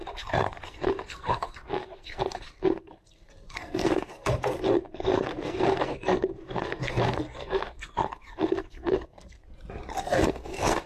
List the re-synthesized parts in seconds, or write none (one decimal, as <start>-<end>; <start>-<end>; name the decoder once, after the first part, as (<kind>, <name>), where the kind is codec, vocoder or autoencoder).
0.0-9.4 (codec, SNAC); 10.0-10.9